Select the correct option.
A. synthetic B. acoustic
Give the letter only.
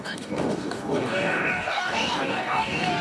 A